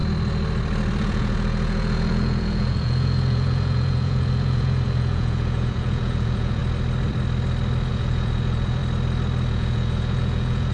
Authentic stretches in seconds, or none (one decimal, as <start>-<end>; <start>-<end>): 0.0-1.0; 6.6-7.9; 8.8-9.5